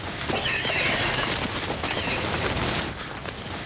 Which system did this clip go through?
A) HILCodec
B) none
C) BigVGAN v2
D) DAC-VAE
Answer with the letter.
B